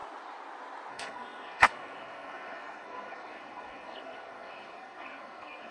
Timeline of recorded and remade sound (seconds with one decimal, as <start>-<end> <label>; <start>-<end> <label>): 0.0-0.9 recorded; 0.9-5.7 remade